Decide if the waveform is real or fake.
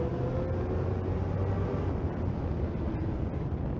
real